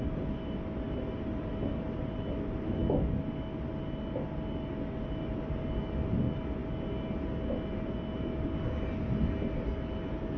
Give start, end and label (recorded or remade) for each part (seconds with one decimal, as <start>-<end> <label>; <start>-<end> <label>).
0.0-10.4 recorded